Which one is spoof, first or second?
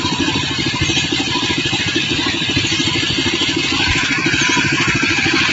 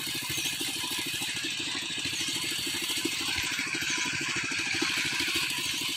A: second